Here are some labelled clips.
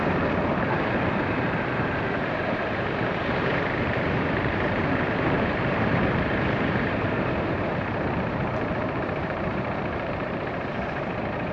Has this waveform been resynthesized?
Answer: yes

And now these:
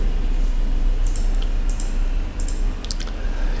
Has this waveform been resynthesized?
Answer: no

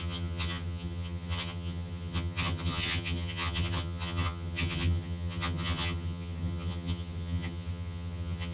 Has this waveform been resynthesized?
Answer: yes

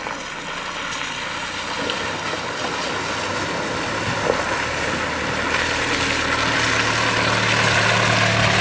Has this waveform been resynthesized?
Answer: no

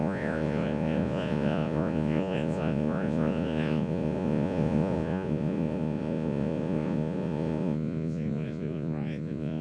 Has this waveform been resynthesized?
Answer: yes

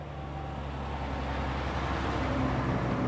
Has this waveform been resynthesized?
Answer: no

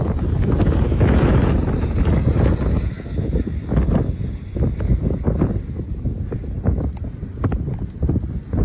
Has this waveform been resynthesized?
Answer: no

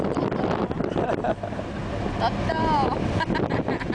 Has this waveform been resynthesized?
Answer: no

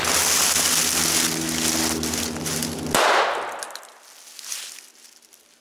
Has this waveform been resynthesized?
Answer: no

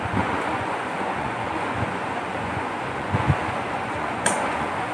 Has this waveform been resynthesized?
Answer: yes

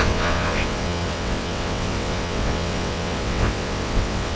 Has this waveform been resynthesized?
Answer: yes